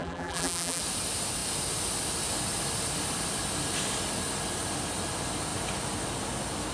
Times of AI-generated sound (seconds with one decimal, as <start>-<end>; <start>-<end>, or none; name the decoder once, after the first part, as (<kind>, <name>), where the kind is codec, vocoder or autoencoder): 0.0-0.8 (vocoder, BigVGAN v2)